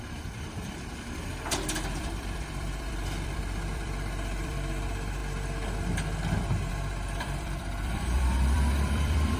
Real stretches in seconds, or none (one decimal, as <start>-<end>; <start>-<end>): 5.2-6.7